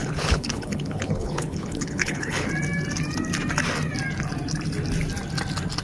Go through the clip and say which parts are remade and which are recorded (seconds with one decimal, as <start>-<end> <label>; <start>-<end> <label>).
0.0-2.5 remade; 2.5-5.8 recorded